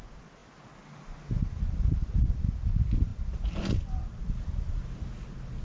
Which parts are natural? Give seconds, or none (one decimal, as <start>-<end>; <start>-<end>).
0.0-5.6